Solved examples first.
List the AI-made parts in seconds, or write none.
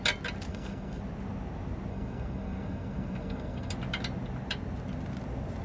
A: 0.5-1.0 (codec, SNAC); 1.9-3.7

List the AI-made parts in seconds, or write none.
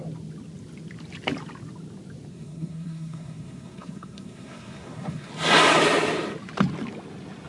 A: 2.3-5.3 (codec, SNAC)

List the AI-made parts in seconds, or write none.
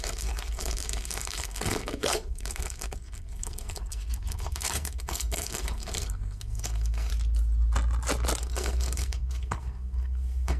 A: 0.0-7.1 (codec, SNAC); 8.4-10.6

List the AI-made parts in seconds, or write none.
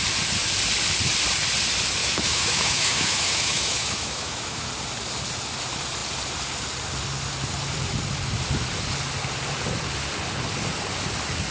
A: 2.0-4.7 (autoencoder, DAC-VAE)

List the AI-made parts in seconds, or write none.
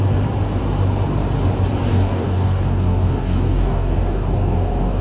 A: 1.9-5.0 (codec, DAC)